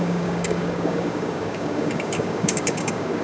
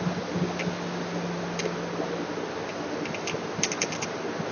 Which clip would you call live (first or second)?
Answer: second